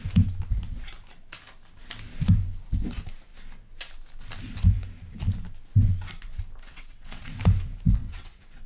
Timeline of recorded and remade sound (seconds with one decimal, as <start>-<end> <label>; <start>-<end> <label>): 0.0-6.7 recorded; 6.7-7.4 remade; 7.4-8.0 recorded; 8.0-8.7 remade